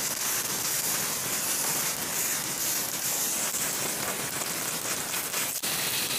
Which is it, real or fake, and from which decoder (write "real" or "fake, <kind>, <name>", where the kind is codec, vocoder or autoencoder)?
real